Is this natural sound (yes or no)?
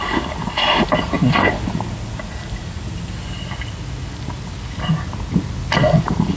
yes